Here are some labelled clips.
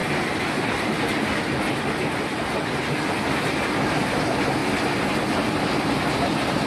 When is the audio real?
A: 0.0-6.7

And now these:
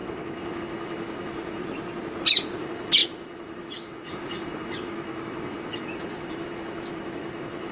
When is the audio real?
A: 1.6-2.6

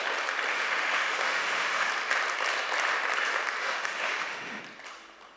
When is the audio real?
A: 0.0-0.5; 1.9-3.6; 4.6-5.4

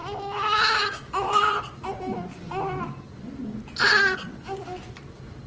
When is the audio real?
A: 1.5-5.5

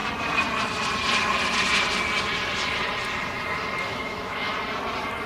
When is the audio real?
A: 0.0-3.9; 4.5-5.3

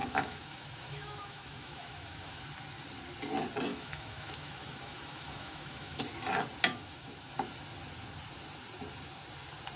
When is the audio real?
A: 2.4-3.7; 6.0-6.7; 7.3-9.8

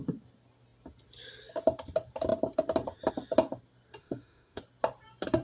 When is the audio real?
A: 0.0-4.0; 4.6-5.4

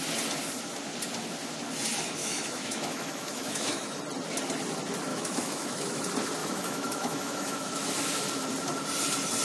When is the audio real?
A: 0.0-2.2; 4.0-5.1; 6.0-6.4; 7.9-9.4